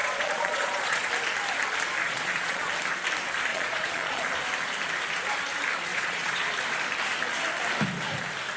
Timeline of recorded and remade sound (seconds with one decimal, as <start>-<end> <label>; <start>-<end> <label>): 0.0-1.1 remade; 1.1-2.0 recorded; 2.0-2.7 remade; 2.7-3.5 recorded; 3.5-4.2 remade; 4.2-5.9 recorded; 5.9-6.5 remade; 6.5-8.6 recorded